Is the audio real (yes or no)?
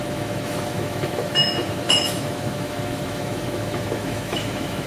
no